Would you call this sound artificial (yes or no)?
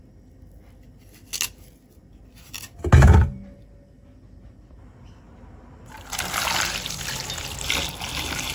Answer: no